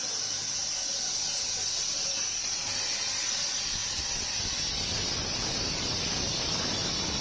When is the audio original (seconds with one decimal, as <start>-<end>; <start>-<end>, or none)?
0.0-7.2